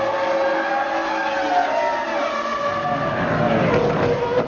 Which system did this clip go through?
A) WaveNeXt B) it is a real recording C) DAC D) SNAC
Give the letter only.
B